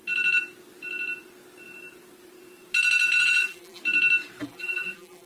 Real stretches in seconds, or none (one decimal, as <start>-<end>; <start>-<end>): 0.0-3.2; 3.8-4.4